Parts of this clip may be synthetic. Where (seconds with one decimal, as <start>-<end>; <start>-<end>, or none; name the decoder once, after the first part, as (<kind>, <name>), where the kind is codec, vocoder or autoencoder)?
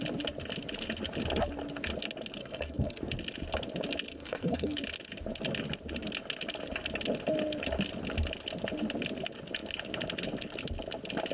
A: 2.4-3.0 (codec, SNAC); 4.1-4.8